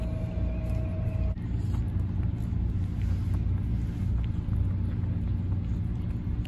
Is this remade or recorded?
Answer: recorded